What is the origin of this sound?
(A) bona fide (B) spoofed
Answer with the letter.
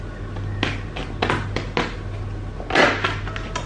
A